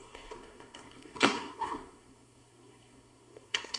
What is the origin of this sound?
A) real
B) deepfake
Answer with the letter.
B